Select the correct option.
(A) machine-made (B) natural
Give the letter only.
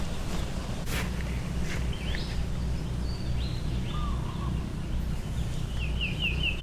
B